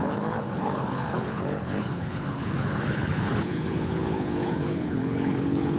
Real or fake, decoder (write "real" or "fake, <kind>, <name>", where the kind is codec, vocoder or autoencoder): fake, codec, HILCodec